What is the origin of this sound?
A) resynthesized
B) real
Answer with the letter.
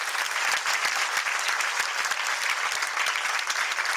B